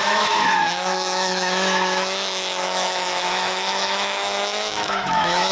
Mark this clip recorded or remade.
remade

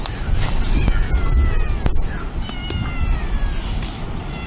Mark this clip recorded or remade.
recorded